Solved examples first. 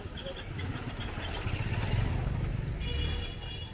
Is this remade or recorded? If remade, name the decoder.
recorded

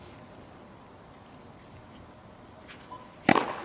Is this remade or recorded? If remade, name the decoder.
recorded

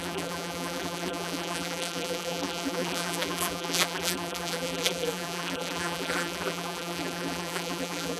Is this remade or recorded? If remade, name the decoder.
remade, vocoder, BigVGAN v2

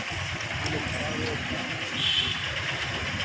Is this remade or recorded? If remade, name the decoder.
recorded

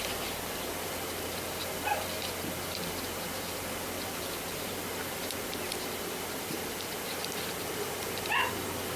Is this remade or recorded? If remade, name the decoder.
remade, vocoder, BigVGAN v2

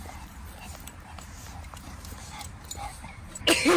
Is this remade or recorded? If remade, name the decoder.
remade, vocoder, BigVGAN v2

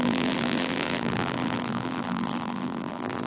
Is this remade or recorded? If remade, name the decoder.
remade, vocoder, BigVGAN v2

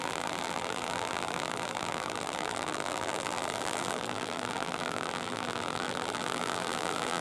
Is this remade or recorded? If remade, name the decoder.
remade, vocoder, BigVGAN v2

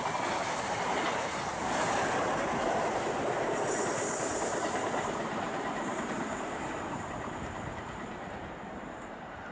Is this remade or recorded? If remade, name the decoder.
remade, vocoder, BigVGAN v2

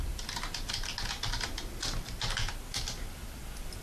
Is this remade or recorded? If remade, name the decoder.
recorded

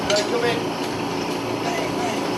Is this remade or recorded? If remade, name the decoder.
recorded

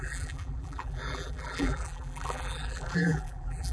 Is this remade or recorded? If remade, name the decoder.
remade, vocoder, BigVGAN v2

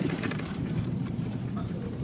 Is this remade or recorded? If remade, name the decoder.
remade, vocoder, BigVGAN v2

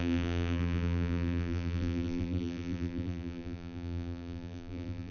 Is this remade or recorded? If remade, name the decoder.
remade, vocoder, BigVGAN v2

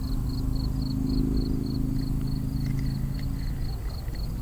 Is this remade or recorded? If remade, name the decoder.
recorded